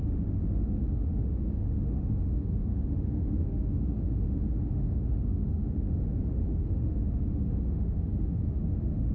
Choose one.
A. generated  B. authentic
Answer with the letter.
A